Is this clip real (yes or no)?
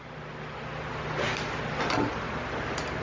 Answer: yes